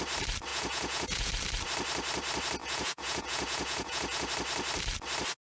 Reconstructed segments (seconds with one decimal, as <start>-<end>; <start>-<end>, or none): 0.5-1.3; 2.6-4.3